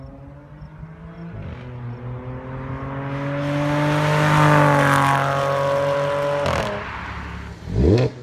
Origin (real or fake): real